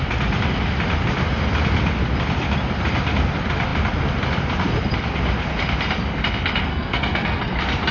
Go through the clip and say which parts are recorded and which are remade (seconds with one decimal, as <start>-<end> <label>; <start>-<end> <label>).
0.0-6.7 recorded; 6.7-7.4 remade; 7.4-7.9 recorded